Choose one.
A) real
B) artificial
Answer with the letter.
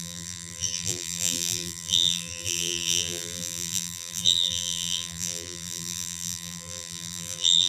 B